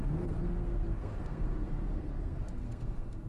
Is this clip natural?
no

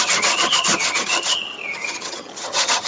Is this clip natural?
no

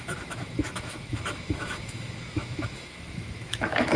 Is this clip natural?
no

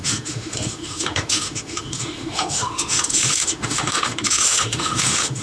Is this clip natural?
no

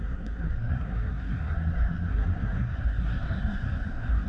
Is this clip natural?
no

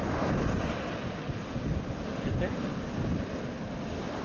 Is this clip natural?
yes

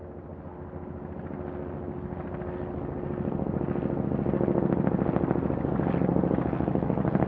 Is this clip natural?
yes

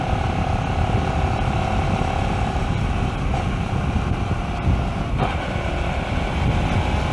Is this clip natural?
yes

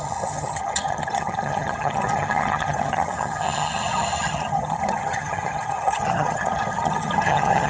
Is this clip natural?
no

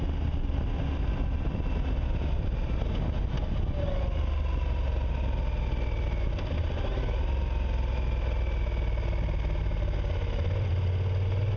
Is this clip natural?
yes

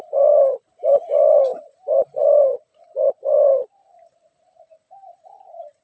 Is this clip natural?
no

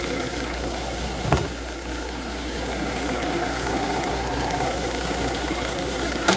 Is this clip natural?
no